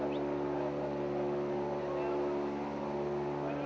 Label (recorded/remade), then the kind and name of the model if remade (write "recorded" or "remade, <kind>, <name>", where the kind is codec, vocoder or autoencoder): recorded